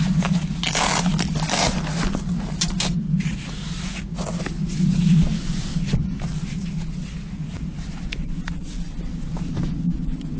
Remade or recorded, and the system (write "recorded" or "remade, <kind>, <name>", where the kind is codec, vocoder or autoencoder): recorded